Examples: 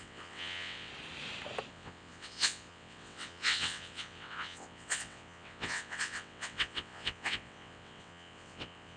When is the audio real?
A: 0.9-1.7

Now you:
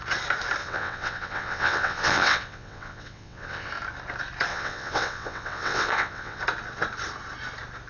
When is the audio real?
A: 0.0-0.6; 3.7-4.5; 6.4-7.9

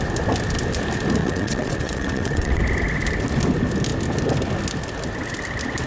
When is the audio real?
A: 0.0-1.2; 2.6-5.9

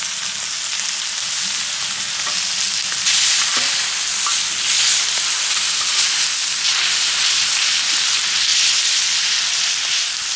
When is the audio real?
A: 0.0-10.4

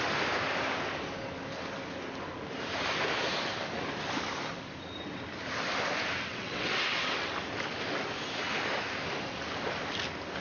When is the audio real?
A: 0.0-6.3; 7.3-10.4

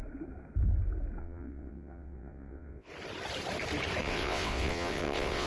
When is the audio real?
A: 0.0-1.2; 2.9-4.0